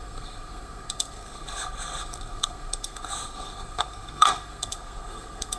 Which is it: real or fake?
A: fake